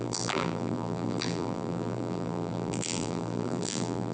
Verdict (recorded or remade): remade